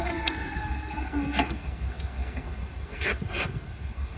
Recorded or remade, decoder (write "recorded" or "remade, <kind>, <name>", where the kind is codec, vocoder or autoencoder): remade, codec, SNAC